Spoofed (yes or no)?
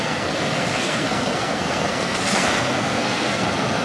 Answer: yes